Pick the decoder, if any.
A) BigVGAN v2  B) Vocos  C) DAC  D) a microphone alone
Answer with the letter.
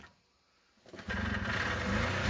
D